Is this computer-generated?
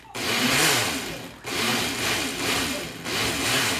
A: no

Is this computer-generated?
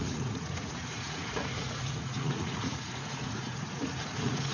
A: yes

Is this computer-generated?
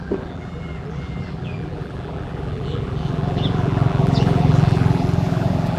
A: yes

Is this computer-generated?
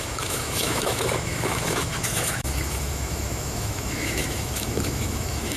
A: yes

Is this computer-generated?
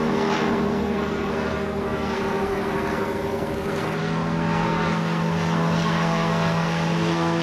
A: yes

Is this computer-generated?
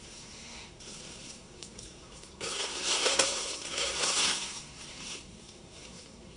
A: yes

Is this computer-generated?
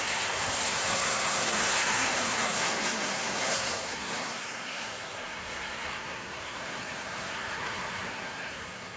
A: yes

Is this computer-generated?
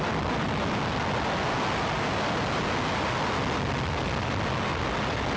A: no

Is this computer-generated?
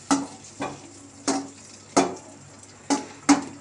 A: no